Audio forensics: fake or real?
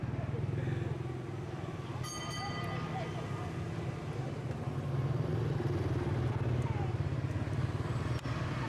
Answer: real